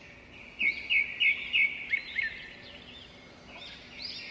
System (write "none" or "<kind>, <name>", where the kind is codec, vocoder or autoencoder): none